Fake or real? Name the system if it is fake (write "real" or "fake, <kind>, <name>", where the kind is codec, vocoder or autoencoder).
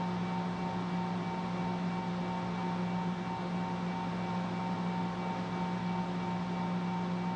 real